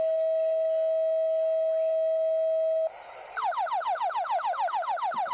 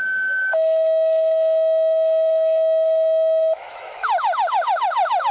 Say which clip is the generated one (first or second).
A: second